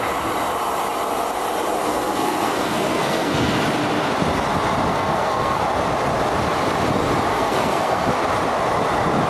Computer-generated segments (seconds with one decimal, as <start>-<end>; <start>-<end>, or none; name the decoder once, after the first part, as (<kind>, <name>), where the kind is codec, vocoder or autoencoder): 1.8-3.6 (codec, SNAC); 4.9-5.6; 7.3-8.1